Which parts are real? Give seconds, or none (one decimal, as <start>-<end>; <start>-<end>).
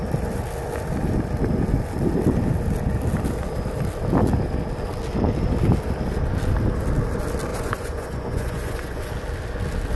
0.0-7.5; 9.1-9.9